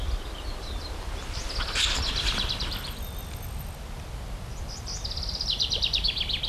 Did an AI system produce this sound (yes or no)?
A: no